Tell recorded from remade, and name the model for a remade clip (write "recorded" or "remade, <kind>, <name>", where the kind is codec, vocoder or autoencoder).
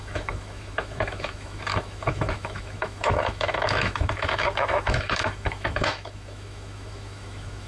remade, autoencoder, DAC-VAE